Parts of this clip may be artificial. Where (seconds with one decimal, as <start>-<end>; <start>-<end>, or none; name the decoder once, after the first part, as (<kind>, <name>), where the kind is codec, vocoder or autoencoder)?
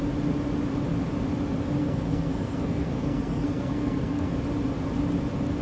1.8-4.3 (codec, SNAC)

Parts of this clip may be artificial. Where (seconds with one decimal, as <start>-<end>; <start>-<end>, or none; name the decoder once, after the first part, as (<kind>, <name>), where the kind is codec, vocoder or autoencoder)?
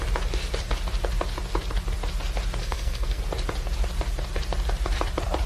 2.6-3.2 (codec, SNAC)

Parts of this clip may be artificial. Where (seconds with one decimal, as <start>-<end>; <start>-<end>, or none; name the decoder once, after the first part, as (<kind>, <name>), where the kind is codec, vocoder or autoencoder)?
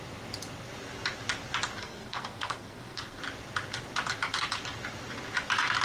1.8-3.2 (codec, SNAC)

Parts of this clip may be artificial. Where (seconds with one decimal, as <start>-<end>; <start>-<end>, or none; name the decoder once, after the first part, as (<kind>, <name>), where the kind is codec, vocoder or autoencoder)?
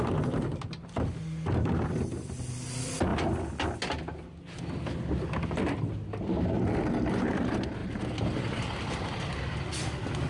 none